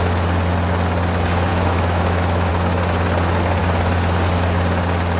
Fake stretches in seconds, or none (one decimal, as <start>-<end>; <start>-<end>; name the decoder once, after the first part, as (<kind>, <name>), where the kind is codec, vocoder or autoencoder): 1.5-2.5 (autoencoder, DAC-VAE)